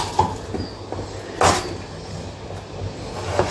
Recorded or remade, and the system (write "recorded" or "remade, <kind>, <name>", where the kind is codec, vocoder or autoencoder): recorded